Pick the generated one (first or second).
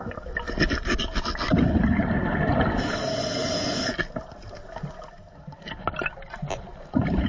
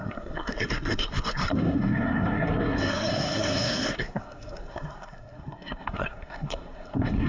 second